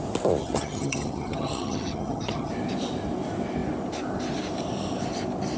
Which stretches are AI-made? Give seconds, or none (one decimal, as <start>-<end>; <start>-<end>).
0.4-2.5